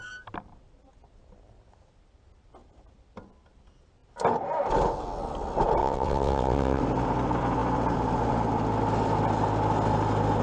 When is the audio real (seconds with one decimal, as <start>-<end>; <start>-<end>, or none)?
0.0-5.8; 6.8-10.4